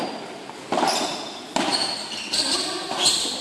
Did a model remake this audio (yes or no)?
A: no